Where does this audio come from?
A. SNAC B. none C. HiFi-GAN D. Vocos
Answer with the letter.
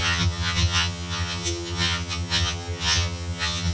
C